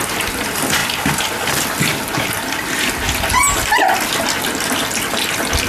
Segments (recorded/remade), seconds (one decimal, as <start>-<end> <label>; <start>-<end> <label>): 0.0-5.7 recorded